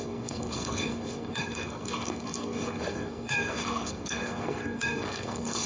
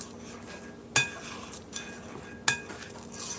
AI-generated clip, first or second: first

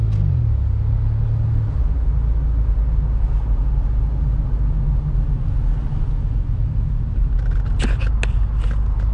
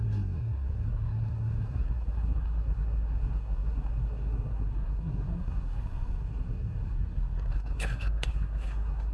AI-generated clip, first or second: second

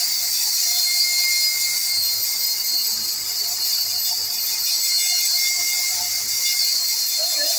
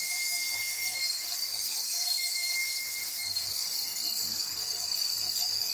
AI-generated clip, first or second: second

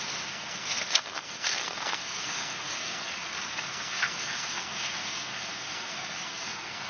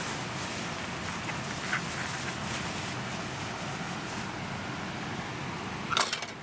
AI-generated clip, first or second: first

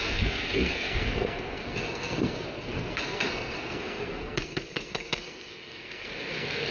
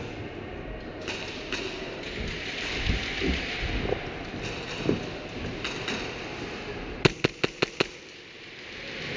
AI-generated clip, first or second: first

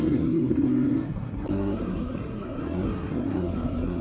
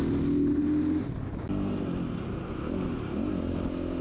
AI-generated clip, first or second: first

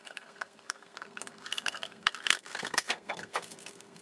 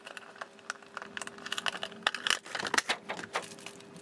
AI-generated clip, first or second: first